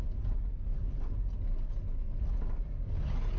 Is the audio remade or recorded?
recorded